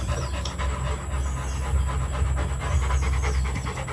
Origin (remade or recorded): recorded